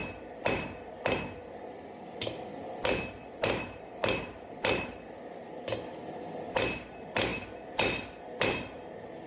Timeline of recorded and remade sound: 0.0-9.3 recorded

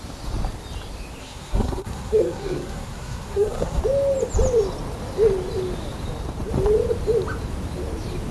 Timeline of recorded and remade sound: 0.0-1.2 recorded; 1.2-3.8 remade; 3.8-8.3 recorded

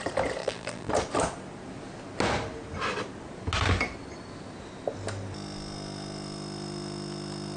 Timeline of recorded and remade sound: 0.0-0.4 recorded; 0.4-0.9 remade; 0.9-7.6 recorded

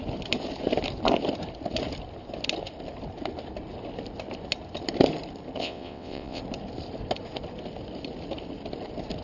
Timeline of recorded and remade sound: 0.0-5.6 recorded; 5.6-6.4 remade; 6.4-9.2 recorded

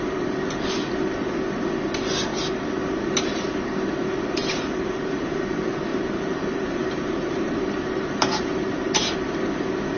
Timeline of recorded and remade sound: 0.0-4.4 recorded; 4.4-5.3 remade; 5.3-5.9 recorded; 5.9-8.3 remade; 8.3-10.0 recorded

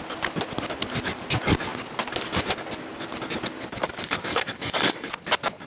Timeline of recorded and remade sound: 0.0-4.3 recorded; 4.3-5.1 remade; 5.1-5.7 recorded

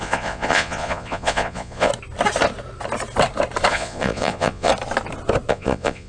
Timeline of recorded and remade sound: 0.0-1.9 remade; 1.9-3.7 recorded; 3.7-4.7 remade; 4.7-5.5 recorded; 5.5-6.1 remade